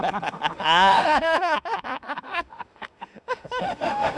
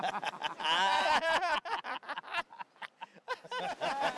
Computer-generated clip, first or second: first